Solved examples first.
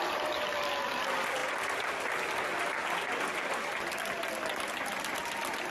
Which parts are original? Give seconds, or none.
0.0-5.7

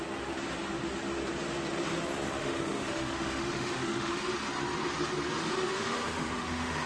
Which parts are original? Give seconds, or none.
0.0-2.4; 4.3-5.4

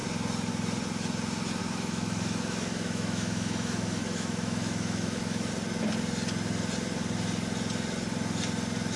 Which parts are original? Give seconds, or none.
0.0-1.6; 5.5-9.0

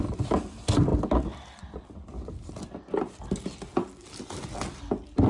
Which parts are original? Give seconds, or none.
0.0-5.3

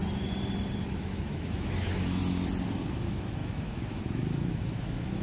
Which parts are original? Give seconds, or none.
0.0-0.9; 2.2-2.8

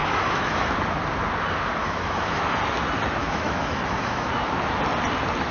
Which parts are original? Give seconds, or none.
0.7-1.8; 2.4-3.2; 4.3-5.5